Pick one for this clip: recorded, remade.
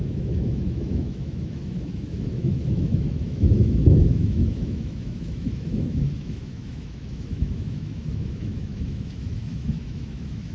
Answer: remade